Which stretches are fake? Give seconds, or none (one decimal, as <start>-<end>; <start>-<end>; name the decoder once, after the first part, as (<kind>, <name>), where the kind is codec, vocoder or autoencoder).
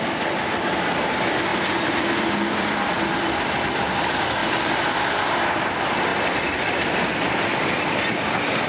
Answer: 0.0-4.4 (vocoder, BigVGAN v2); 5.2-6.1; 7.8-8.7